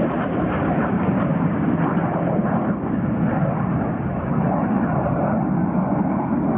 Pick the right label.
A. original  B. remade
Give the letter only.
A